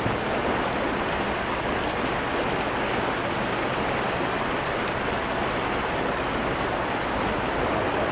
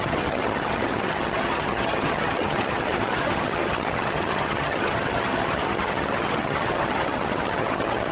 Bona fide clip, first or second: first